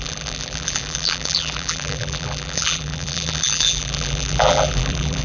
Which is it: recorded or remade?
remade